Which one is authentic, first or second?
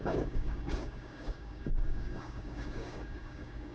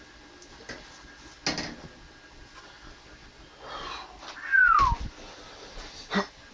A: second